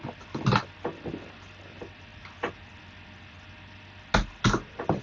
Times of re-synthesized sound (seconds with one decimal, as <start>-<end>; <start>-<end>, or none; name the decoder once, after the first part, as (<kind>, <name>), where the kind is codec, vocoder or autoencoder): none

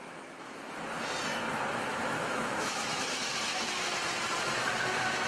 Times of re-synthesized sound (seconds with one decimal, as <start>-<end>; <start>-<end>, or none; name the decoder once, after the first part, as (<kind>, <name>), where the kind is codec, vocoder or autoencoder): 0.0-0.8 (autoencoder, DAC-VAE); 1.9-3.6

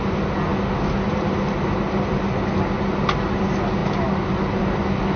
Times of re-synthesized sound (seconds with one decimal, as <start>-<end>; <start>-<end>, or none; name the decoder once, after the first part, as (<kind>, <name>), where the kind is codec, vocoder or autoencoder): none

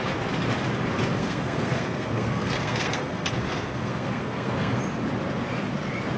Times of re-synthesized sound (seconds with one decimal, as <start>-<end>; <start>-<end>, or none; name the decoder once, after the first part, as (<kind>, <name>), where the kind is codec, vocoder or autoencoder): 1.2-4.8 (codec, SNAC)

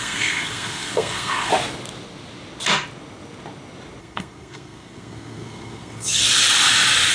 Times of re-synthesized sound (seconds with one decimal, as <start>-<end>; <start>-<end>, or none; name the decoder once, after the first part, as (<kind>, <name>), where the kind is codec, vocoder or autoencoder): 0.0-1.5 (codec, SNAC); 4.0-6.2

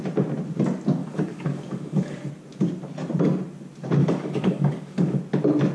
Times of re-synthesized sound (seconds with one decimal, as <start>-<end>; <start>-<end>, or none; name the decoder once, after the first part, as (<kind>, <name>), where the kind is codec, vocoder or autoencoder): 1.0-2.3 (codec, DAC); 4.0-5.2